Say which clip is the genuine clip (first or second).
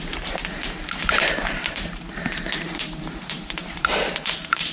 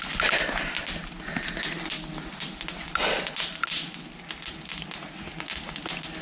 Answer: second